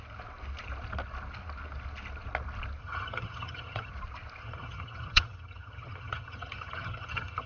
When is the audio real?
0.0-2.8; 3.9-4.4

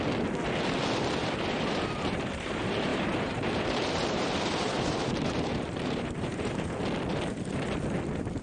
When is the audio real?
0.0-1.2; 2.5-2.9; 6.8-8.4

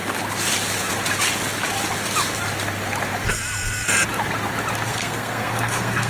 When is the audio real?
0.0-4.9

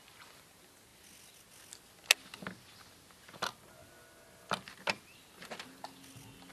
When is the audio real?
0.0-6.5

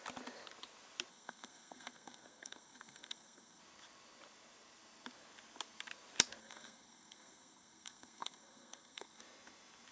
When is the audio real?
0.0-1.1; 3.6-6.4; 9.2-9.9

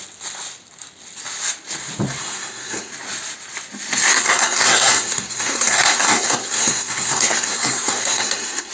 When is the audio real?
0.0-2.2; 2.9-4.1

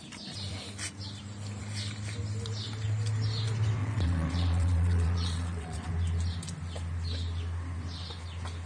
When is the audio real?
0.0-3.8; 5.9-8.7

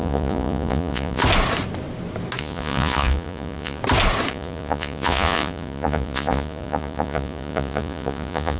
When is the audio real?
1.2-2.4; 3.8-4.3